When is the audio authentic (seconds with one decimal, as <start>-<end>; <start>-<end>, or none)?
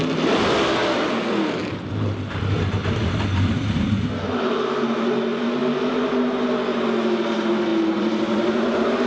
0.0-9.1